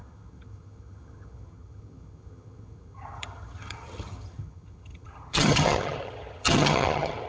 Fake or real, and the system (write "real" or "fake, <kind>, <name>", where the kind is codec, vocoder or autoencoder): fake, vocoder, HiFi-GAN